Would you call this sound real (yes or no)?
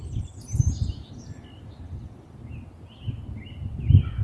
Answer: yes